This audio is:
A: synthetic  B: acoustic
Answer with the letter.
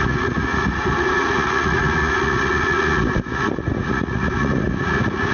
A